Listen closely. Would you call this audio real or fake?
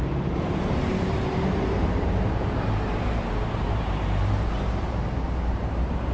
fake